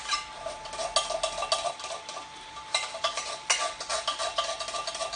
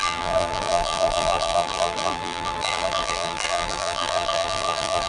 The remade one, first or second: second